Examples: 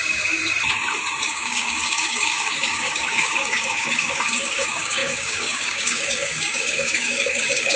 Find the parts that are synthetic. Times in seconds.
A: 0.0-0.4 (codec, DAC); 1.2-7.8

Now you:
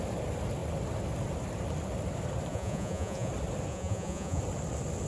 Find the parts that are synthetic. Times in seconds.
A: 2.5-3.3 (vocoder, Vocos); 3.7-4.4

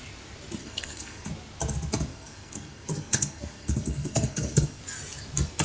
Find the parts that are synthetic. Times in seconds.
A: 0.6-1.3 (codec, SNAC); 2.1-4.8

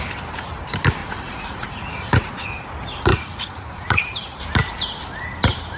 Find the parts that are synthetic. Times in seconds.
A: 1.0-2.5 (vocoder, Vocos); 3.1-4.4

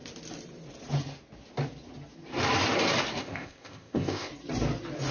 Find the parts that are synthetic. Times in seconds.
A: 3.2-4.3 (codec, ZipCodec)